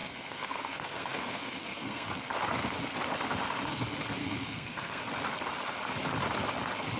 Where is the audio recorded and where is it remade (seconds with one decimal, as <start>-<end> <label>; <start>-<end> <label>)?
0.0-2.1 remade; 2.1-4.2 recorded; 4.2-5.0 remade; 5.0-7.0 recorded